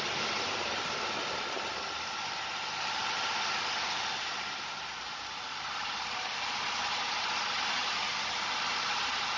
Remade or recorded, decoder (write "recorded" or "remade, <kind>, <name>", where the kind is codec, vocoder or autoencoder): recorded